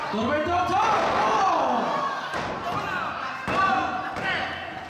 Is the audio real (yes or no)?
yes